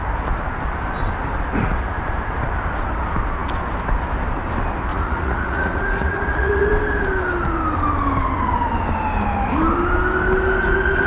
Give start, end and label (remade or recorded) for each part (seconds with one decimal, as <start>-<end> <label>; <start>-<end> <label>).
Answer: 0.0-4.9 recorded; 4.9-6.7 remade; 6.7-11.1 recorded